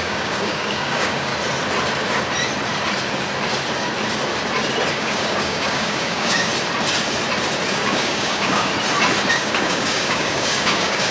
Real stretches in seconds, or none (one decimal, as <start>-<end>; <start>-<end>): 1.3-4.9; 6.5-7.7; 8.7-9.3